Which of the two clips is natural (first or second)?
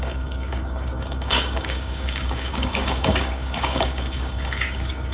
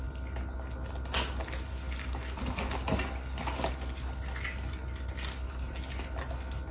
second